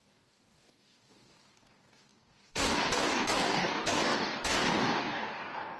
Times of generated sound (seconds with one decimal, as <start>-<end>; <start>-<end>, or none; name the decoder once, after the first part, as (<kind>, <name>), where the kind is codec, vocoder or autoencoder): 0.0-5.8 (codec, DAC)